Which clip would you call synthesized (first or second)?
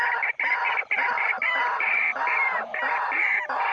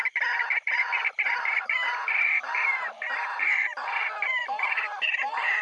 second